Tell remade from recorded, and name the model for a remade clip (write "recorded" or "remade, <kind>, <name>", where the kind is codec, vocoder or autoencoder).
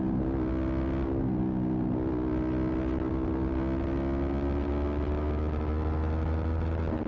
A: recorded